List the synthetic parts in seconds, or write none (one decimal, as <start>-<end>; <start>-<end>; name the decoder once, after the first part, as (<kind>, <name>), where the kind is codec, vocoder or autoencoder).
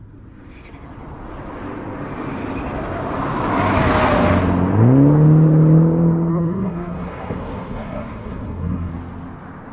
6.3-8.9 (codec, SNAC)